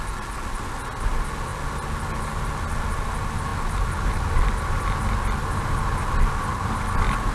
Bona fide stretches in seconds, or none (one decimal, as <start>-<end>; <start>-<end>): 0.0-7.3

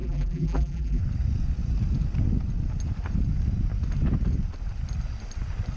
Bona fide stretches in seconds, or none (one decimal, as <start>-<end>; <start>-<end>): 1.0-5.8

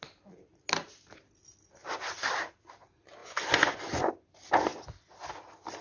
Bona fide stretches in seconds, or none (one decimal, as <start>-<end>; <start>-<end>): 0.0-3.2; 4.1-5.8

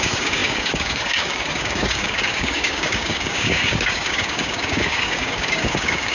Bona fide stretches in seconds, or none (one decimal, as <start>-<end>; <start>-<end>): none